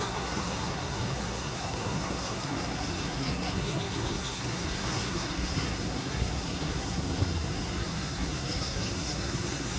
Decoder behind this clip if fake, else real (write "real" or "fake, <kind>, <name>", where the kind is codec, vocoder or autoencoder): fake, codec, SNAC